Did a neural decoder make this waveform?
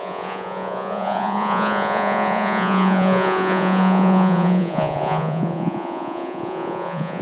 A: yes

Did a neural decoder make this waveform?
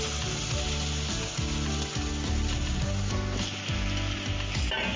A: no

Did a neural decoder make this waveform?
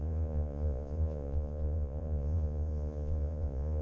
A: yes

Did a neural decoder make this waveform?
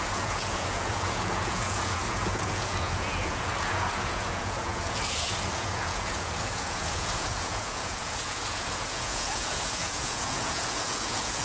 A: yes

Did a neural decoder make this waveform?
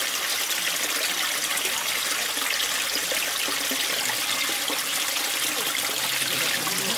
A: no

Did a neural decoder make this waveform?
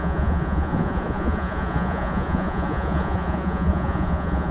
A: yes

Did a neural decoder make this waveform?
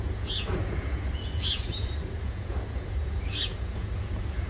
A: yes